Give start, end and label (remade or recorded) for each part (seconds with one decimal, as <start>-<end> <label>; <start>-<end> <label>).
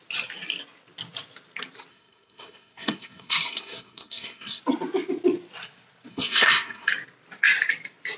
0.0-1.9 recorded; 1.9-4.6 remade; 4.6-6.1 recorded; 6.1-6.9 remade; 6.9-8.2 recorded